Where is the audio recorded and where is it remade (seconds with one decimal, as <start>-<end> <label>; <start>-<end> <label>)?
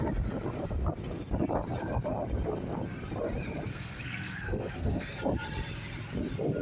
0.0-3.7 recorded; 3.7-5.2 remade; 5.2-6.6 recorded